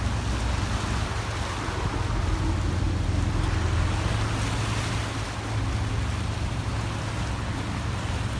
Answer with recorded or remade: recorded